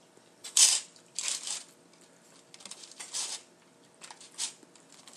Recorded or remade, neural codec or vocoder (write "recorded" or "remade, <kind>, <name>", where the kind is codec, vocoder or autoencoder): recorded